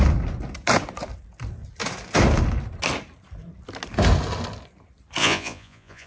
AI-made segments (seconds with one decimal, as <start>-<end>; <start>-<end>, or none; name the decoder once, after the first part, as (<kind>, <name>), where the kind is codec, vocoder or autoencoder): 5.2-6.1 (vocoder, Vocos)